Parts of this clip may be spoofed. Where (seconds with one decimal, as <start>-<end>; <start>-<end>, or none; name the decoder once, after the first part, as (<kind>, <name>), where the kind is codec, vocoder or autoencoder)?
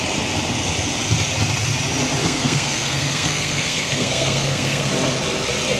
2.2-4.9 (codec, SNAC)